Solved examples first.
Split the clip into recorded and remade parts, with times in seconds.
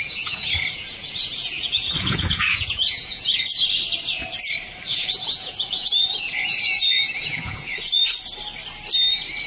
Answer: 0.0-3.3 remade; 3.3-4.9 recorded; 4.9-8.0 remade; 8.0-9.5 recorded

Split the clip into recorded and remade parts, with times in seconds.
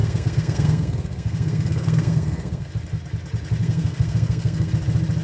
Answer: 0.0-2.7 remade; 2.7-3.6 recorded; 3.6-4.7 remade; 4.7-5.2 recorded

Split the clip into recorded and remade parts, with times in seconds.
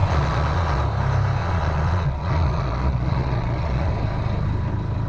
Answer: 0.0-0.8 remade; 0.8-1.4 recorded; 1.4-3.9 remade; 3.9-5.1 recorded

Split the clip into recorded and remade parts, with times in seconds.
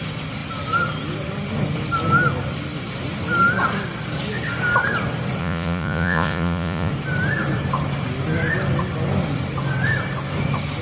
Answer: 0.0-5.4 recorded; 5.4-6.9 remade; 6.9-10.8 recorded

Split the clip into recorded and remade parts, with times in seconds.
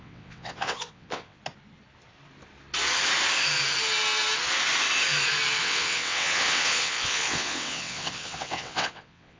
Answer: 0.0-1.4 remade; 1.4-5.6 recorded; 5.6-9.4 remade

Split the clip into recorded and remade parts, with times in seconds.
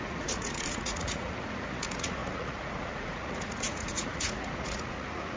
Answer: 0.0-5.4 remade